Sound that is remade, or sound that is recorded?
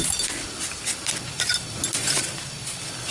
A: recorded